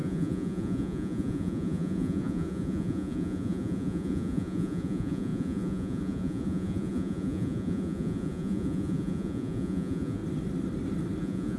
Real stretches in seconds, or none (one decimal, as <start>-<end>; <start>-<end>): 10.2-11.2